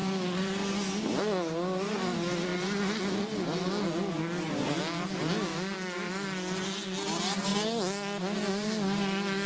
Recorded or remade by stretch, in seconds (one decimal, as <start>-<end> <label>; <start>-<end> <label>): 0.0-1.2 remade; 1.2-5.5 recorded; 5.5-6.6 remade; 6.6-9.5 recorded

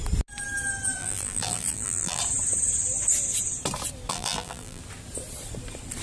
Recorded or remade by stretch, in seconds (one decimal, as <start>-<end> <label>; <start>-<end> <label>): 0.0-1.0 recorded; 1.0-2.2 remade; 2.2-4.1 recorded; 4.1-4.8 remade; 4.8-6.0 recorded

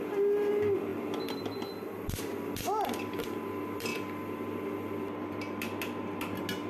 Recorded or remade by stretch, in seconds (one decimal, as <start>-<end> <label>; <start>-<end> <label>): 0.0-6.7 recorded

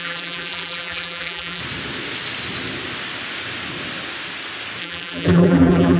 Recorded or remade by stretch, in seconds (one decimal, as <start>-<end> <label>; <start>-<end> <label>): 0.0-1.6 remade; 1.6-4.8 recorded; 4.8-6.0 remade

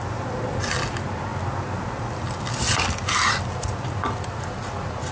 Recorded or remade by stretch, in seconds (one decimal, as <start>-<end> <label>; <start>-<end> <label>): 0.0-5.1 recorded

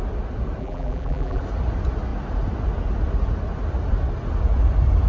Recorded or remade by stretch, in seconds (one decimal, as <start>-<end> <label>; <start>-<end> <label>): 0.0-0.6 recorded; 0.6-1.4 remade; 1.4-5.1 recorded